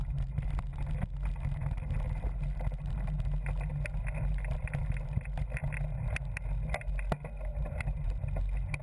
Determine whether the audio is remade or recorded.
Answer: recorded